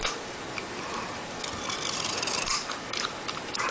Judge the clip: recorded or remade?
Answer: remade